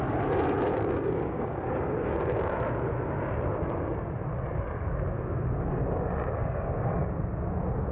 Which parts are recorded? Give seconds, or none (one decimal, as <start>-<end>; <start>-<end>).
0.0-0.7; 2.5-6.4; 7.1-7.9

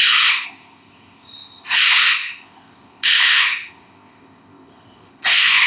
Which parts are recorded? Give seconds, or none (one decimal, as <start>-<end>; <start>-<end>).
none

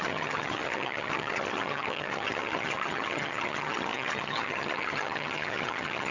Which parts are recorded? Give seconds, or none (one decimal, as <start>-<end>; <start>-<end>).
none

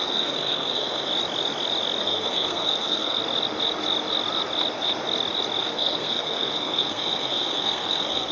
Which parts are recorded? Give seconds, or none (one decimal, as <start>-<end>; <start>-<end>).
1.1-2.0; 3.2-5.6

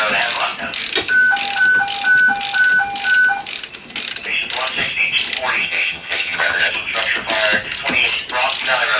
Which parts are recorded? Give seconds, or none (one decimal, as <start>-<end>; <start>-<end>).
0.0-5.6; 6.7-9.0

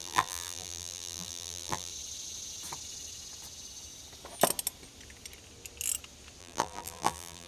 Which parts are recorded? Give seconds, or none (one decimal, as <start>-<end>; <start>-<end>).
1.9-6.4